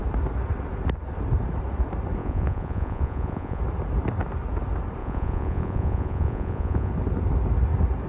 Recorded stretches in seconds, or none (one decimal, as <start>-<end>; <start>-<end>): 0.0-2.2; 3.6-5.0; 6.9-8.1